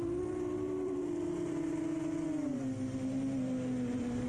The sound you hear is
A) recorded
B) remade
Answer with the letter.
A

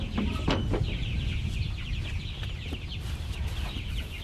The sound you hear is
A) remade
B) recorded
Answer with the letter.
B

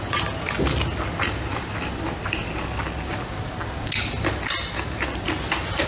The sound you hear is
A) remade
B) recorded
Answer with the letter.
B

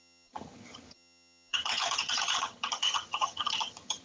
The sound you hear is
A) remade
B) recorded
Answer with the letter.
A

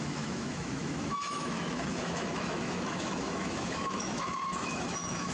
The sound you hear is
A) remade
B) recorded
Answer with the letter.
A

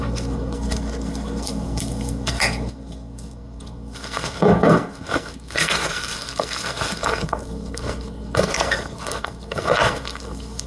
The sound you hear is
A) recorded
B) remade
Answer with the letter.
B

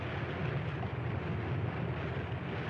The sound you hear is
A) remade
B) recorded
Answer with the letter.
B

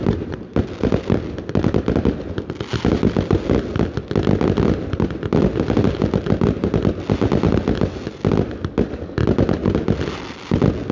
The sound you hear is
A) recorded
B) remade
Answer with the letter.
A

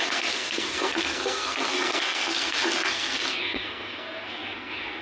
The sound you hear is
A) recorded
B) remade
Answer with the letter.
B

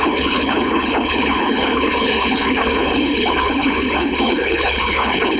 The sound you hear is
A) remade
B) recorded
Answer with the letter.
A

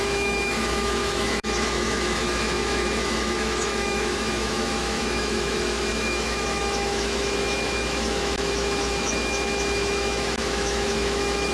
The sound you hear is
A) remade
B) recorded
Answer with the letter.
A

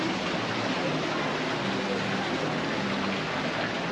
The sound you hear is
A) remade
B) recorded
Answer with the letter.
B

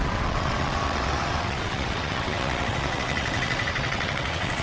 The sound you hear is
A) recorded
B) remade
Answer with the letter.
B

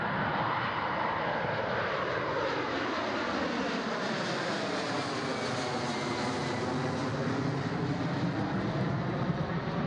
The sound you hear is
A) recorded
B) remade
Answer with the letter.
A